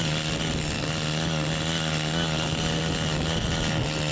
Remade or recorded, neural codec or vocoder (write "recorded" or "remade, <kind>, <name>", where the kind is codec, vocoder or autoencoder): recorded